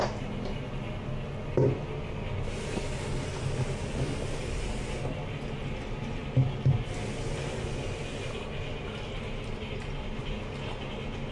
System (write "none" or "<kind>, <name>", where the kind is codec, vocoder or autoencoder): none